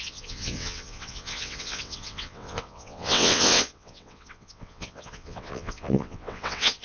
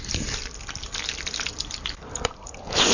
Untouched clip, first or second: second